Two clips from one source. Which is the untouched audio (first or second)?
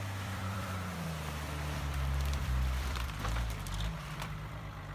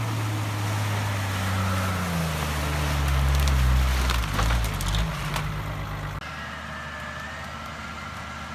second